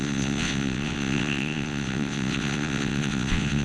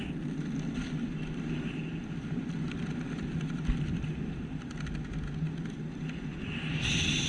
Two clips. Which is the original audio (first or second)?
second